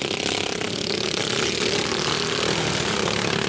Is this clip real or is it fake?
real